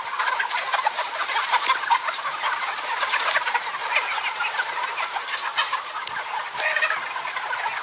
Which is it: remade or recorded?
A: recorded